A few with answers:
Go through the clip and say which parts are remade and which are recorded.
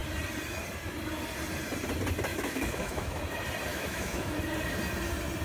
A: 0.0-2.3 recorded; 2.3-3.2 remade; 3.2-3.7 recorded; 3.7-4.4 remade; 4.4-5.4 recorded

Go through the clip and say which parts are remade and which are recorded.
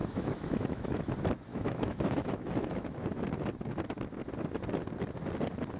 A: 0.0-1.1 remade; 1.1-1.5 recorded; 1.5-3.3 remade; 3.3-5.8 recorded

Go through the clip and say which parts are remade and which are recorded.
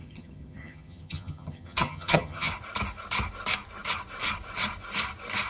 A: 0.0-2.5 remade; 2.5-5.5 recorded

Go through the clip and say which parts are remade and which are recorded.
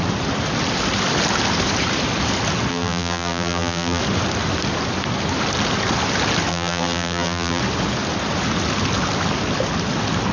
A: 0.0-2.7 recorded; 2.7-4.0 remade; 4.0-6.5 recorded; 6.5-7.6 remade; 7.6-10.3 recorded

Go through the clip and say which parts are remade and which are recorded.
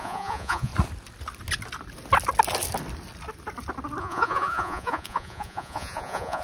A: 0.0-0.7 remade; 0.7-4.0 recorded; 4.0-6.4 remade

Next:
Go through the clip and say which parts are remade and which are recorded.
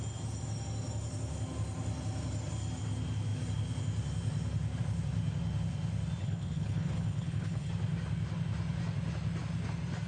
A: 0.0-6.2 recorded; 6.2-7.7 remade; 7.7-10.1 recorded